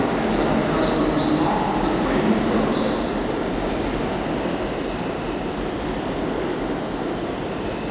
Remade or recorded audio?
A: recorded